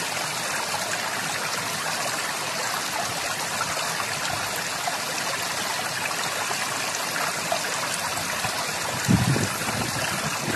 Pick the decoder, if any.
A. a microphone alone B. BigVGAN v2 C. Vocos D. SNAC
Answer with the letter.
A